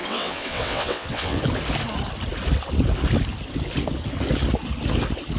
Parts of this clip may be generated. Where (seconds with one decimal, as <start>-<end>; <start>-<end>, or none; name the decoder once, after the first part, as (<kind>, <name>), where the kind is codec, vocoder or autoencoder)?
0.0-1.4 (vocoder, WaveNeXt)